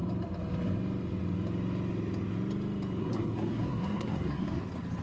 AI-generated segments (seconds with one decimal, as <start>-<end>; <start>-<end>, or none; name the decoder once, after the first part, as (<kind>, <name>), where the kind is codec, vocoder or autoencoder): 3.0-4.6 (codec, SNAC)